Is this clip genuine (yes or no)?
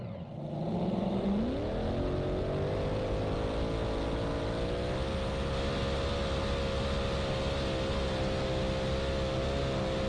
yes